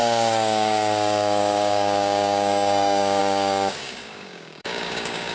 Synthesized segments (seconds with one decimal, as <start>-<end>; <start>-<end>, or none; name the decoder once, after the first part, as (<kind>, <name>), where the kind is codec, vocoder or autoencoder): 0.0-5.3 (codec, DAC)